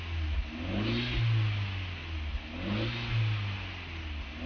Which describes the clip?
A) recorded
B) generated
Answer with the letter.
A